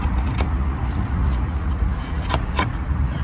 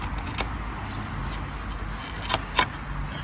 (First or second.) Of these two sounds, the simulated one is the first